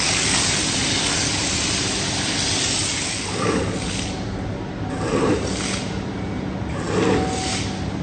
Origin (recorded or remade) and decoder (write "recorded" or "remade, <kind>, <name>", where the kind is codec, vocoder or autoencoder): recorded